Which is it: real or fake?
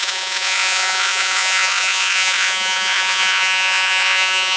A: fake